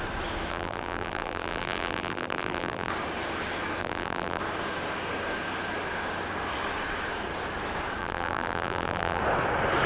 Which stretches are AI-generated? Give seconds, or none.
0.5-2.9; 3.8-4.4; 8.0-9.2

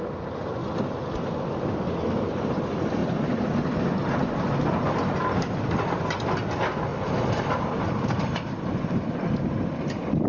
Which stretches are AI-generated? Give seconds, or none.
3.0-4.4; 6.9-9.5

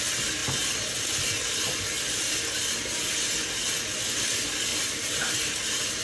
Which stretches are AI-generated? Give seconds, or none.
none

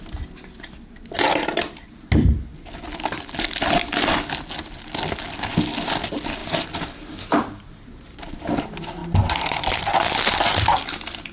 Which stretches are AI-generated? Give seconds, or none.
6.4-8.6; 9.0-10.1

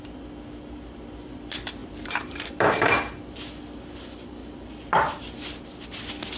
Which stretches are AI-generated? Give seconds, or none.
1.8-2.5; 4.4-5.2

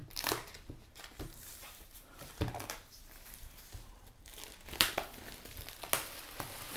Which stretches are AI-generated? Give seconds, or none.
0.0-3.6

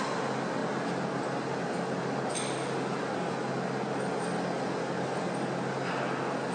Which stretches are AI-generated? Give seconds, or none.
none